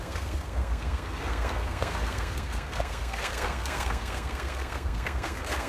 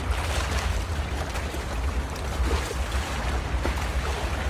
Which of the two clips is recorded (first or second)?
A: second